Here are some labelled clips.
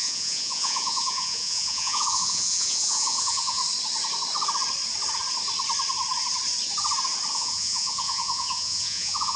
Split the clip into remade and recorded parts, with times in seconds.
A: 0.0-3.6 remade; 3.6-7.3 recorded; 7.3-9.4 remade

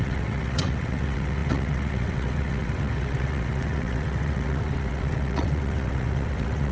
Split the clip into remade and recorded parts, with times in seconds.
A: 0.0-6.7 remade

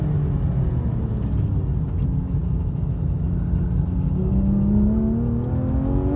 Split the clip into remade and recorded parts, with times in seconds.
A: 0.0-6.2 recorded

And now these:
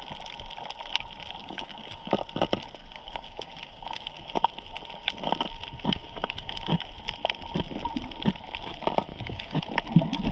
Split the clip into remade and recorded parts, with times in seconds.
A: 0.0-1.4 recorded; 1.4-2.1 remade; 2.1-2.8 recorded; 2.8-4.3 remade; 4.3-6.0 recorded; 6.0-6.9 remade; 6.9-9.1 recorded; 9.1-9.6 remade; 9.6-10.3 recorded

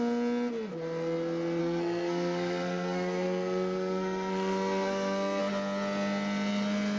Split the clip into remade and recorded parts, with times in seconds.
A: 0.0-1.6 recorded; 1.6-5.4 remade; 5.4-7.0 recorded